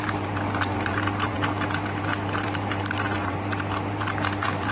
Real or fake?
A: fake